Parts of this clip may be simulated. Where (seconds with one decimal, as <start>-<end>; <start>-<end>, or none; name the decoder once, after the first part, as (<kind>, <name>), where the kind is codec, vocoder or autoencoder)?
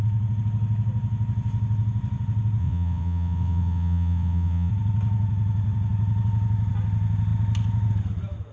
2.6-4.7 (vocoder, WaveNeXt)